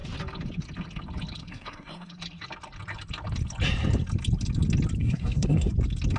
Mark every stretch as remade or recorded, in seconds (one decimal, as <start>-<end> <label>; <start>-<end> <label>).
0.0-1.4 recorded; 1.4-2.1 remade; 2.1-5.0 recorded; 5.0-5.7 remade; 5.7-6.2 recorded